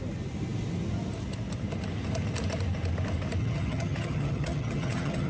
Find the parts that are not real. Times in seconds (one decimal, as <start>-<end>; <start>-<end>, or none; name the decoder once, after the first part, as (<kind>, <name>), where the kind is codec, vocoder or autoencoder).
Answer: 3.4-5.3 (vocoder, HiFi-GAN)